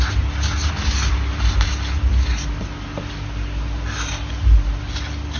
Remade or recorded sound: recorded